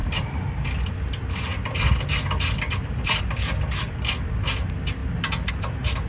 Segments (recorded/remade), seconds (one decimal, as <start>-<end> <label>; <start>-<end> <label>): 0.0-6.1 recorded